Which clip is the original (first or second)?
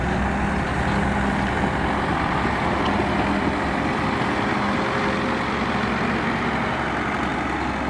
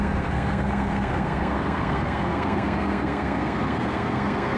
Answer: first